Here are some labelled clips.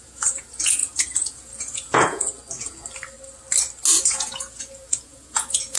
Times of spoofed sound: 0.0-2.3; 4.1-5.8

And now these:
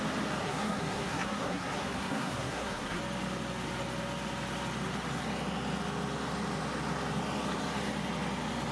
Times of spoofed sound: 0.4-3.0